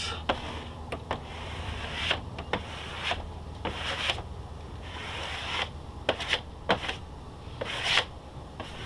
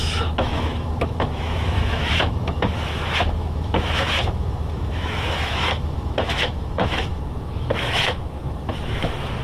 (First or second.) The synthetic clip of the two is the second